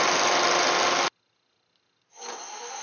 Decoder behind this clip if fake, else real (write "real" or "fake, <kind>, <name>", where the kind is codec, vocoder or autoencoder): real